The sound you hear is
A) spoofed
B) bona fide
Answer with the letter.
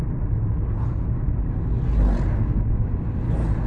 B